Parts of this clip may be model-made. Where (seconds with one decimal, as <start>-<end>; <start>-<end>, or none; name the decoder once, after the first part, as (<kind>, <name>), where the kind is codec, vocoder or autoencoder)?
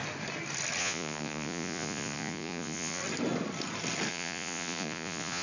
0.8-3.0 (vocoder, Vocos); 4.1-5.4